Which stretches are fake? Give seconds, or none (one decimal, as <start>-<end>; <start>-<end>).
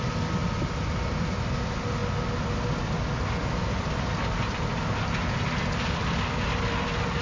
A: none